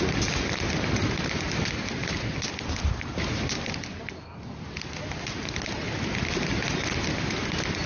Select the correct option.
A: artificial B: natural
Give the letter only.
B